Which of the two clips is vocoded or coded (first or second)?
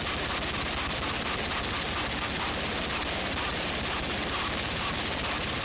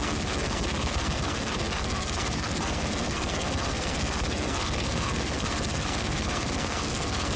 second